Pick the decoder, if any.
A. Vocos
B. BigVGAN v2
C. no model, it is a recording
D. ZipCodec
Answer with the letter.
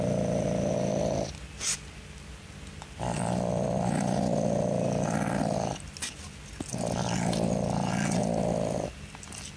C